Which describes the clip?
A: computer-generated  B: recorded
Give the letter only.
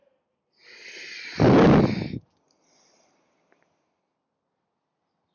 B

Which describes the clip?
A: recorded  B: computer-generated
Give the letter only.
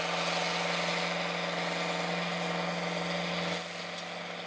A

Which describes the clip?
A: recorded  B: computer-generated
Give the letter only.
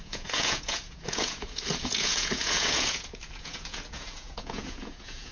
B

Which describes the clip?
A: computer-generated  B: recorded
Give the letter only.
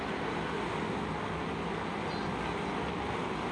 B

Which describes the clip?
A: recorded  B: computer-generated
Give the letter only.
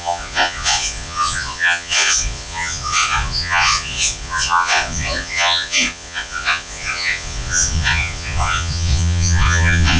B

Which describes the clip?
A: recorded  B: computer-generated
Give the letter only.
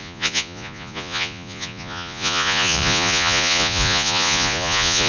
B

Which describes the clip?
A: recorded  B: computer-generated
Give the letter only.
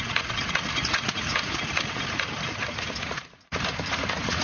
B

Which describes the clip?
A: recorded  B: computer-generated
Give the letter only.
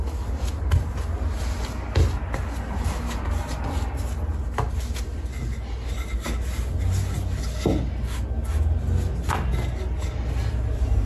A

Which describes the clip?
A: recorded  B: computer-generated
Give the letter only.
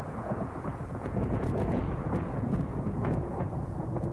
B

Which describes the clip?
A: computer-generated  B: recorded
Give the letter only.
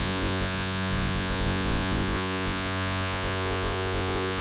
A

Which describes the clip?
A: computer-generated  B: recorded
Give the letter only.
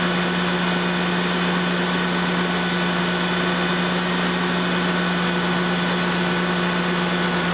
B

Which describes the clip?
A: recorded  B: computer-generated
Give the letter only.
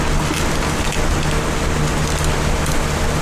A